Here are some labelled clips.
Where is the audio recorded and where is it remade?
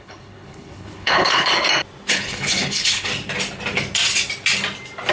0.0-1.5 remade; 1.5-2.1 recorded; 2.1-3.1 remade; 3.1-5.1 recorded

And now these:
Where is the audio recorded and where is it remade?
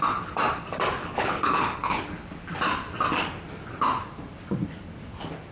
0.0-1.0 recorded; 1.0-2.0 remade; 2.0-5.5 recorded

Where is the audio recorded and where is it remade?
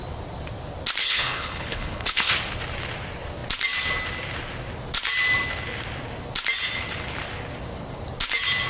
0.0-1.0 recorded; 1.0-2.3 remade; 2.3-8.7 recorded